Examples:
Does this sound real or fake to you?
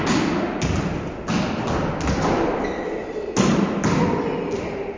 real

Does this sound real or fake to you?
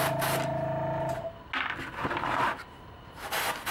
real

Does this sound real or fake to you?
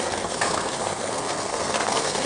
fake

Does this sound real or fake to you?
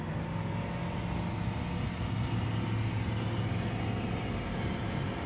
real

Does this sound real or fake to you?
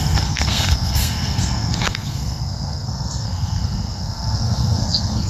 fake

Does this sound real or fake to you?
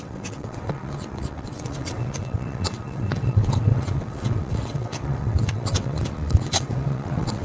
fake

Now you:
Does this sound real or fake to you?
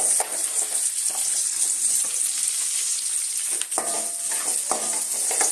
real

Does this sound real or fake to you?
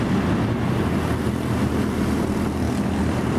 real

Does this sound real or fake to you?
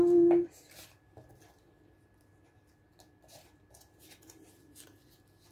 real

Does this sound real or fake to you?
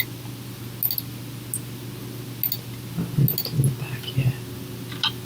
real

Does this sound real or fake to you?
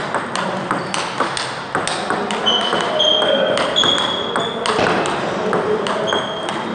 real